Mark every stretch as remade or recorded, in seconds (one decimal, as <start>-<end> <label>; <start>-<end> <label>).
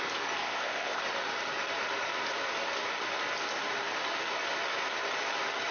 0.0-0.4 recorded; 0.4-1.0 remade; 1.0-5.7 recorded